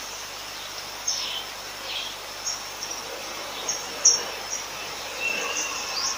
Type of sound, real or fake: fake